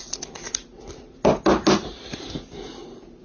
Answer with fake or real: real